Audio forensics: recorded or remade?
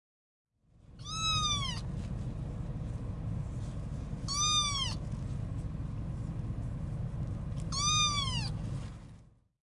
recorded